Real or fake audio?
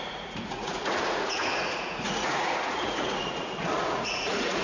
fake